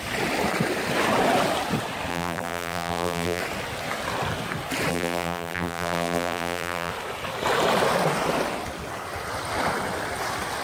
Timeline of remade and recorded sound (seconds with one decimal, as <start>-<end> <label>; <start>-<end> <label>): 0.0-2.1 recorded; 2.1-3.4 remade; 3.4-4.9 recorded; 4.9-6.9 remade; 6.9-10.6 recorded